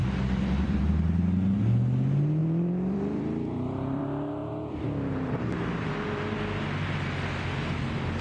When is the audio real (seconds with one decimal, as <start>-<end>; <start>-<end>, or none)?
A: 0.8-2.4; 4.0-4.4; 5.4-8.2